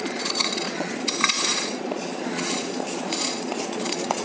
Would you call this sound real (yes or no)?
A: no